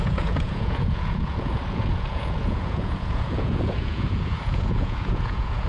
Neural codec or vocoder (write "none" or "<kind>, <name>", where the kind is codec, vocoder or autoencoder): vocoder, Vocos